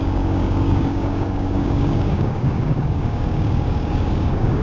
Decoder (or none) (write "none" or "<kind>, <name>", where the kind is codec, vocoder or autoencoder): codec, DAC